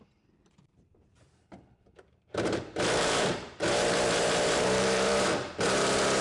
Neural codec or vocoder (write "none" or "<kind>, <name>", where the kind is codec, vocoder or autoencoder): vocoder, BigVGAN v2